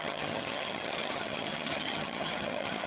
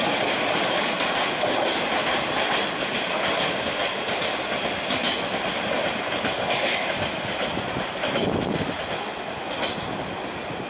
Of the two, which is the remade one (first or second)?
first